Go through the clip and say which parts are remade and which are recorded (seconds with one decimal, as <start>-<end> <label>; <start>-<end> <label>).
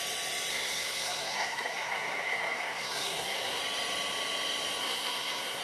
0.0-0.5 recorded; 0.5-3.6 remade; 3.6-4.8 recorded; 4.8-5.6 remade